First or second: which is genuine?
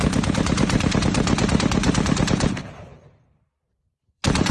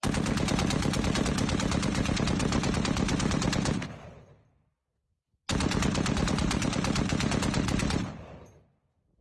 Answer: second